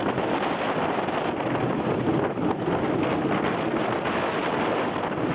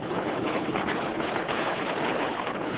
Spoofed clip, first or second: second